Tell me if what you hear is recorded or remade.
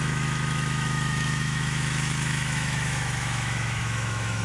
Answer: remade